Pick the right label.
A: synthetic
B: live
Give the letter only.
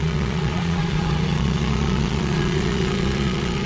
A